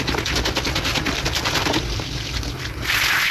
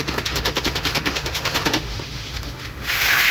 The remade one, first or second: second